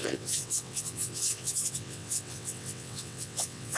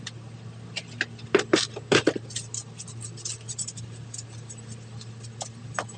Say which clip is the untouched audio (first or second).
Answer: second